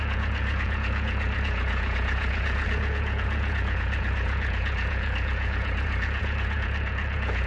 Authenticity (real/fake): fake